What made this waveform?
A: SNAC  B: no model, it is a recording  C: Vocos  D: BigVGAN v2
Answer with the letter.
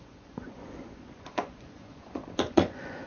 C